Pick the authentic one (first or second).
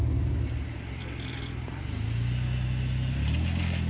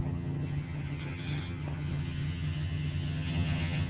first